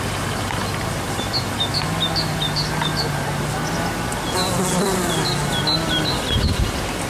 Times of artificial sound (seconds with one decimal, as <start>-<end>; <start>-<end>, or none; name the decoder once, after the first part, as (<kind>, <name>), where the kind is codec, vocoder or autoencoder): none